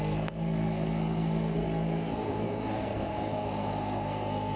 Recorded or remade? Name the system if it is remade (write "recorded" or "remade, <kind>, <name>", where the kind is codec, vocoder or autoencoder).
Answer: remade, codec, SNAC